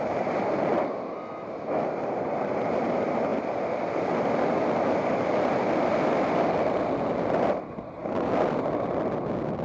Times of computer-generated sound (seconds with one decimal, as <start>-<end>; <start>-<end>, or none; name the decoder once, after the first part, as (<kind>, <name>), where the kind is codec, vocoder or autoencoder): none